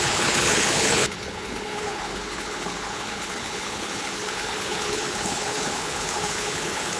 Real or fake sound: fake